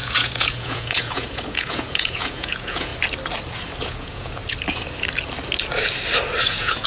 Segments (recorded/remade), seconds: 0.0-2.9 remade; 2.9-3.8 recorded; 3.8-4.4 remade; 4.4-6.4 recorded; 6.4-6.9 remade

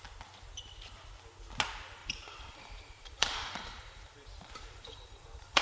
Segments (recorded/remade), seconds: 0.0-2.0 recorded; 2.0-5.6 remade

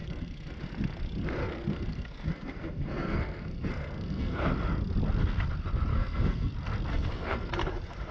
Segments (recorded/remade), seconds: 0.0-0.6 remade; 0.6-1.4 recorded; 1.4-4.5 remade; 4.5-5.9 recorded; 5.9-6.5 remade; 6.5-6.9 recorded; 6.9-7.5 remade; 7.5-8.1 recorded